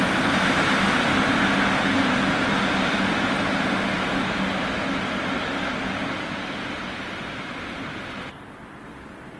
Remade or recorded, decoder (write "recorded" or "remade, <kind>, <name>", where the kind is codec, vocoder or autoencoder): recorded